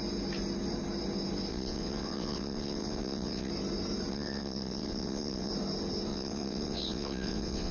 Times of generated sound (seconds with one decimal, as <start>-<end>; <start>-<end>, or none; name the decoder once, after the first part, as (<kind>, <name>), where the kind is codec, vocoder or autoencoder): 1.5-3.5 (vocoder, WaveNeXt); 4.1-5.5; 6.1-7.7